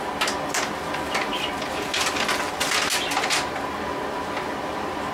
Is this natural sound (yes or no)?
yes